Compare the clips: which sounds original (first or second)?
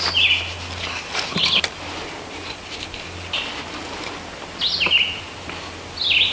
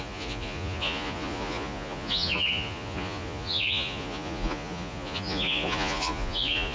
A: first